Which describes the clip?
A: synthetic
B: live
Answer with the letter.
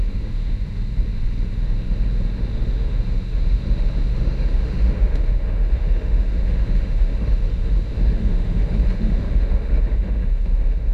A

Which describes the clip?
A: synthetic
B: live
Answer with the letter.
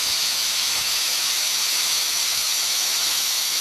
A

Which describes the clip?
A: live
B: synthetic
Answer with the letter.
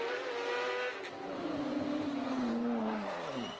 A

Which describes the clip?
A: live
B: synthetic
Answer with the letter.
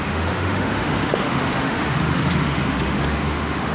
B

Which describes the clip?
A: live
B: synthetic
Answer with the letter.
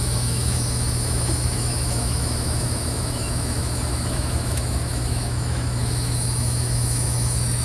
B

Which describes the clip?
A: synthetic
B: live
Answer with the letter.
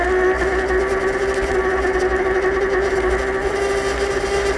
B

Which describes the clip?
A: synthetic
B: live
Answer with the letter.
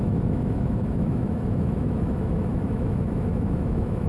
A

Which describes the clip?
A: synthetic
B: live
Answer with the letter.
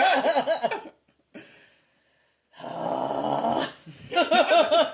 B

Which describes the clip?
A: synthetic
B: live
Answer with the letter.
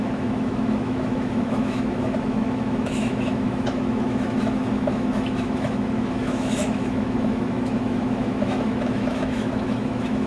A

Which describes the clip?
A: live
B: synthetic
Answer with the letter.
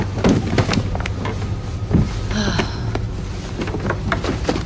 A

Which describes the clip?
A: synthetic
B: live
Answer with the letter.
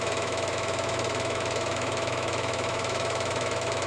A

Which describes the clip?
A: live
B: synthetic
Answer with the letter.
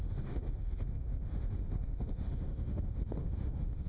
B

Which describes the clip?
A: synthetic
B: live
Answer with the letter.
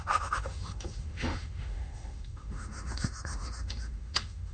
A